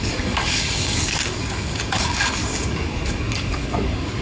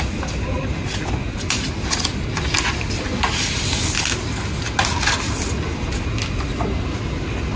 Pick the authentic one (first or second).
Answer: second